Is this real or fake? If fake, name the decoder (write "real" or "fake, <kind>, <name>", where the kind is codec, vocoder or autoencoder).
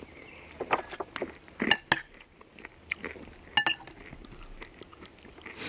real